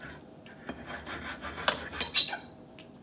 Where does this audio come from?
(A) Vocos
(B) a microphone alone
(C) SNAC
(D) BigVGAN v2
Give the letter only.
B